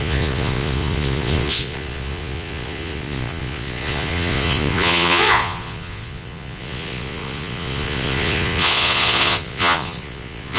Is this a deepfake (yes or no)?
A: yes